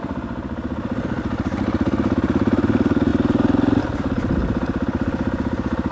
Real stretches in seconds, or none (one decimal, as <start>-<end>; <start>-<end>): 0.0-5.9